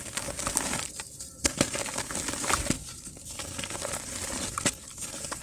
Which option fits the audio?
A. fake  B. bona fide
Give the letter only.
B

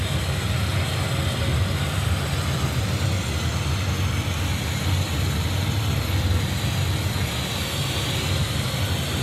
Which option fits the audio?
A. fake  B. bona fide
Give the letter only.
B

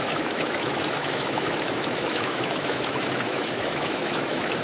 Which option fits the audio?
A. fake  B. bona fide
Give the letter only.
A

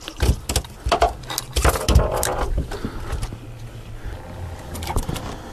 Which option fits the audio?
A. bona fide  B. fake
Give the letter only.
A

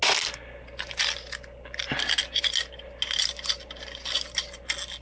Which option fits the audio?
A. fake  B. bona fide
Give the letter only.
B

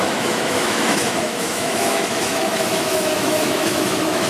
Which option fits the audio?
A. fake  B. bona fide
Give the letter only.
A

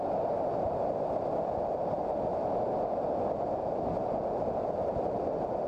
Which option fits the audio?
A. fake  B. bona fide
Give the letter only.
B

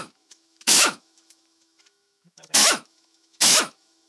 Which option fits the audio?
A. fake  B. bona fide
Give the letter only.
A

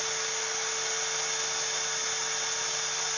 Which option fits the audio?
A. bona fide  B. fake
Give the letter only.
A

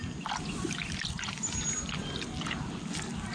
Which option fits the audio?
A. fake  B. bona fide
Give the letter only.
B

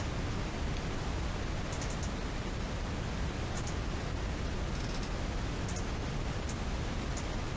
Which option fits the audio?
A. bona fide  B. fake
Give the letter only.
A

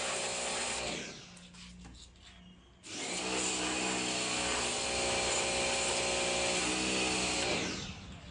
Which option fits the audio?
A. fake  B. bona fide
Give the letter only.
B